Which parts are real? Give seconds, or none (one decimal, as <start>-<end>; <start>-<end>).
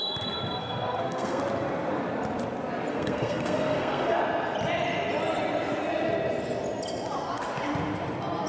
0.0-0.6; 1.4-2.9; 4.2-8.5